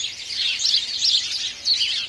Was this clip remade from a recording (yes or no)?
yes